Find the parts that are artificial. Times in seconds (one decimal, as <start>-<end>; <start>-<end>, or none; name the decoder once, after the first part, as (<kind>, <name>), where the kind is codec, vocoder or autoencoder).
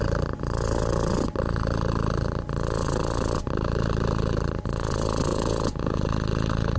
5.3-6.0 (vocoder, Vocos)